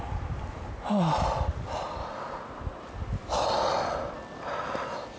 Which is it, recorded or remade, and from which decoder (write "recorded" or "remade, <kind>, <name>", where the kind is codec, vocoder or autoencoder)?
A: recorded